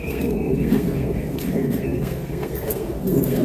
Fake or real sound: fake